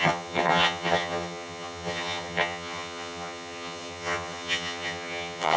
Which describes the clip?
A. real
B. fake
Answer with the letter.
B